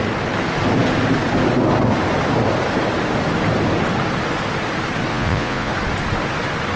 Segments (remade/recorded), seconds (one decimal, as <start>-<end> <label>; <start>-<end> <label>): 0.0-5.1 recorded; 5.1-5.7 remade; 5.7-6.8 recorded